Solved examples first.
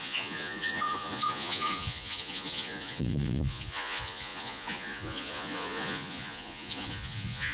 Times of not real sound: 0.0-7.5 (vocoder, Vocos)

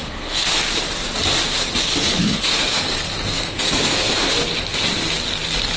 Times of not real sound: 0.0-0.5 (codec, SNAC); 2.0-4.3

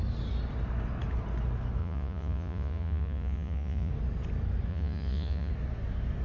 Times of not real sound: 1.8-3.9 (vocoder, Vocos); 4.7-5.5

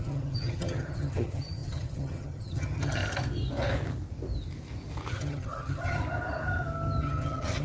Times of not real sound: 0.0-3.0 (vocoder, HiFi-GAN); 5.1-6.0; 7.0-7.6

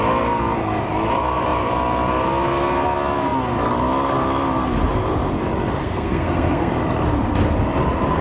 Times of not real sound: 5.8-6.7 (codec, SNAC)

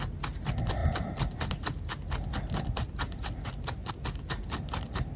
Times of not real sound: none

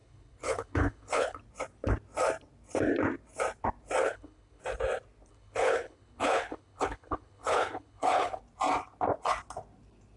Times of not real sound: 0.0-1.4 (codec, HILCodec); 4.0-4.6; 5.3-8.4

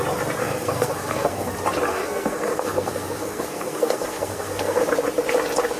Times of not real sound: 0.4-1.5 (codec, SNAC); 1.9-4.8